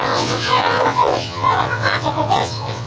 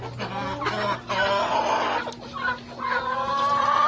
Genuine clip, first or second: second